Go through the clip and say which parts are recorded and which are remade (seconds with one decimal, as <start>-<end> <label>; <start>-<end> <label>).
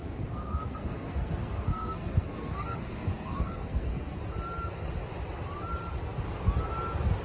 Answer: 0.0-4.2 remade; 4.2-7.2 recorded